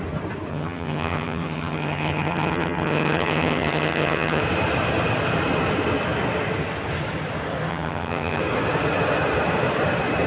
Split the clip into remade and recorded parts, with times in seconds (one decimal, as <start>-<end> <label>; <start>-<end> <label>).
0.0-0.5 recorded; 0.5-4.4 remade; 4.4-7.7 recorded; 7.7-8.4 remade; 8.4-10.3 recorded